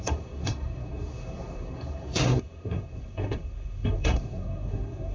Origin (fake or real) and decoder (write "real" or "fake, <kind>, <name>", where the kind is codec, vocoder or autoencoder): fake, codec, SNAC